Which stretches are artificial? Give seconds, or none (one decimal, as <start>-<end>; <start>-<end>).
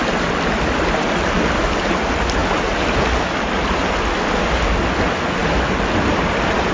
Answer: none